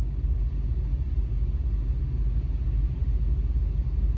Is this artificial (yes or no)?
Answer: no